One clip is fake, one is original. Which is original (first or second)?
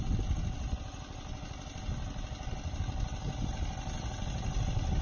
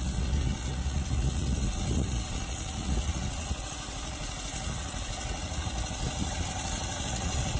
first